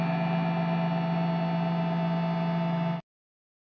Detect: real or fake real